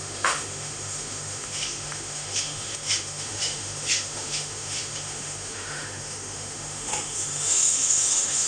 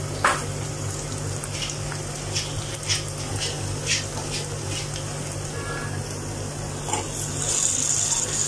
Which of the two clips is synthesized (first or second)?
first